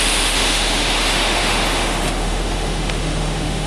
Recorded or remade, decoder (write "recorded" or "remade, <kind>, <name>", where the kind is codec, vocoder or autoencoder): remade, autoencoder, DAC-VAE